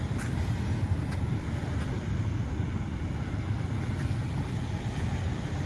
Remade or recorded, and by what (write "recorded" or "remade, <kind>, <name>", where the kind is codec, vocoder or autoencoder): recorded